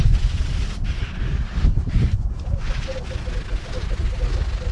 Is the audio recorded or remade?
recorded